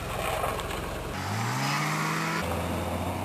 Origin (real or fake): real